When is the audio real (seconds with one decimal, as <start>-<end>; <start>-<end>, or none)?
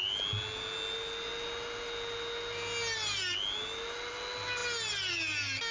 0.0-5.7